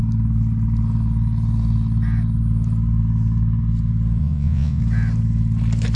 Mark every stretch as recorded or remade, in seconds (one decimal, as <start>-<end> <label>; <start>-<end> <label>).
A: 0.0-4.2 recorded; 4.2-4.8 remade; 4.8-6.0 recorded